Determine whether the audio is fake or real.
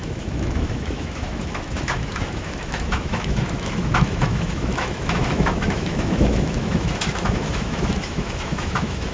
fake